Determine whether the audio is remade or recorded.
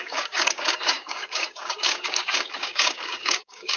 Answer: remade